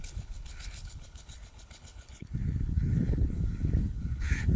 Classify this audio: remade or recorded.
remade